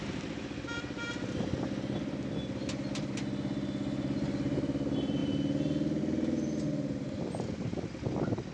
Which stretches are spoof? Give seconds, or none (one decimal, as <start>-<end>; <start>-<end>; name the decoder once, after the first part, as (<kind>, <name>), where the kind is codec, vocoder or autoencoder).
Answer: none